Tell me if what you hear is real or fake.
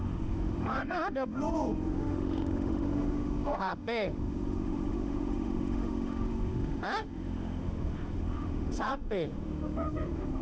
fake